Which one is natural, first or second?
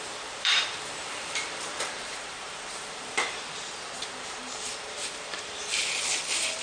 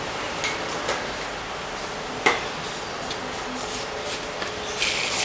second